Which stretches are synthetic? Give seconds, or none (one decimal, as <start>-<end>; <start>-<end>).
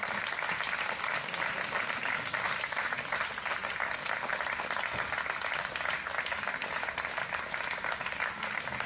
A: none